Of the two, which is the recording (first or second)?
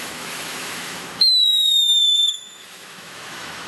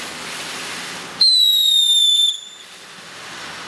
second